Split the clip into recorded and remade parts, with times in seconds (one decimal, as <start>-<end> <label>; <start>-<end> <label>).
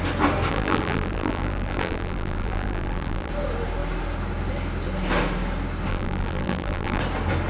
0.0-0.5 recorded; 0.5-3.3 remade; 3.3-5.9 recorded; 5.9-7.0 remade; 7.0-7.5 recorded